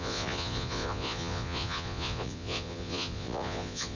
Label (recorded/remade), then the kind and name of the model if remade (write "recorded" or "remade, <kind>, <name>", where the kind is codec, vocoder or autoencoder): remade, vocoder, Vocos